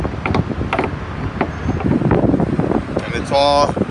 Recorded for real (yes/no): yes